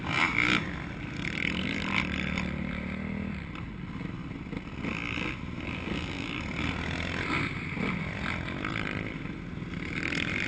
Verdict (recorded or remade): recorded